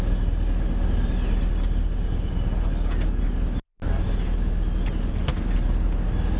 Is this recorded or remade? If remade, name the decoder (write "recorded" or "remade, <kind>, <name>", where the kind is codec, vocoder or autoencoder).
recorded